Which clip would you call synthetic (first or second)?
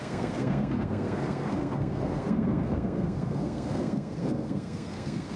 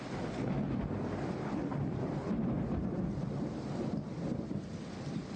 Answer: first